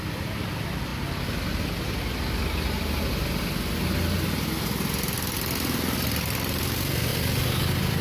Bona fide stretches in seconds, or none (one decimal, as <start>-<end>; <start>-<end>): 0.0-8.0